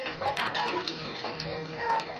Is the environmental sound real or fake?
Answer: fake